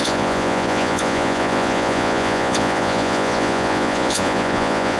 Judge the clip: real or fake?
fake